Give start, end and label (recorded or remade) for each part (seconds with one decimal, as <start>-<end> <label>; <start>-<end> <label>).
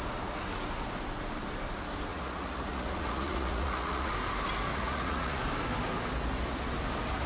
0.0-2.1 recorded; 2.1-4.1 remade; 4.1-4.7 recorded; 4.7-5.4 remade; 5.4-7.3 recorded